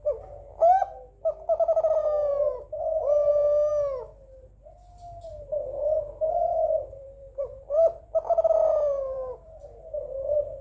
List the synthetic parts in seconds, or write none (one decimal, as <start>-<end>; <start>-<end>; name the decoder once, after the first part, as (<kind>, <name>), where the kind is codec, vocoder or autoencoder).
6.9-10.0 (vocoder, BigVGAN v2)